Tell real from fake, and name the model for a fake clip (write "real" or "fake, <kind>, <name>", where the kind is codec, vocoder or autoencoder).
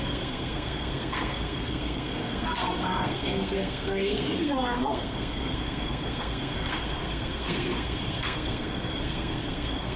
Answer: fake, codec, SNAC